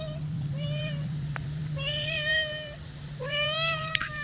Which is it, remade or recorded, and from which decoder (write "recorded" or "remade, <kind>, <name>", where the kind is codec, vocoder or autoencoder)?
remade, vocoder, BigVGAN v2